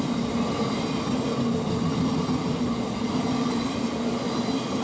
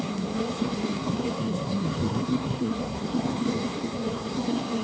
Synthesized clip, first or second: second